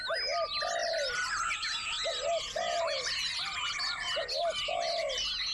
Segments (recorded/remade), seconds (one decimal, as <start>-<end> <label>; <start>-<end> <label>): 0.0-5.5 recorded